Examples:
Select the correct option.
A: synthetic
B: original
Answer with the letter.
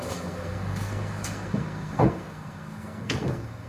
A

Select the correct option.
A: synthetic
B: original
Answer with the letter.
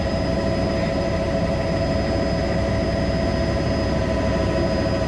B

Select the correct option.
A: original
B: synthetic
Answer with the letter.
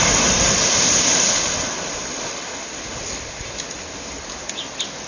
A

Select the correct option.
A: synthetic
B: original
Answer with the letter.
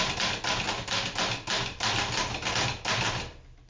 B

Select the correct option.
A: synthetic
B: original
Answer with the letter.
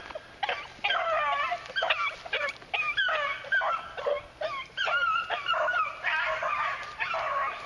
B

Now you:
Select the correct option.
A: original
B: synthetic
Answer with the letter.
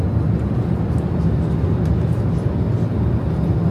A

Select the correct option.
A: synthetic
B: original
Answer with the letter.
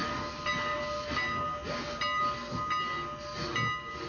B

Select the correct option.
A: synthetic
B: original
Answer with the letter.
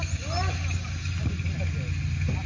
B